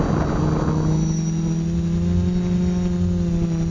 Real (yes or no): yes